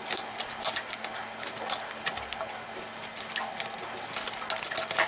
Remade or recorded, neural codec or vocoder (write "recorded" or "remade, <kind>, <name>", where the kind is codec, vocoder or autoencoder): recorded